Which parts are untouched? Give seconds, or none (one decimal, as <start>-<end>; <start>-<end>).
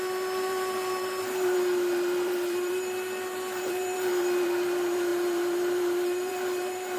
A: none